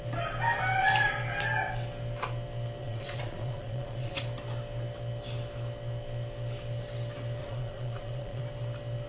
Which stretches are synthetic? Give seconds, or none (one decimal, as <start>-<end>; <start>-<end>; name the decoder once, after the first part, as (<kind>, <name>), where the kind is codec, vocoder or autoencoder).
2.8-4.2 (vocoder, Vocos); 7.4-8.4